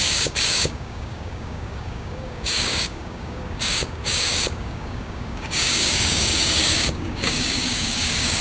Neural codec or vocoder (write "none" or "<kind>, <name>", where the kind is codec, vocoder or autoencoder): codec, DAC